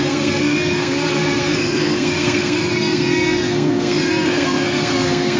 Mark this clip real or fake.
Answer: fake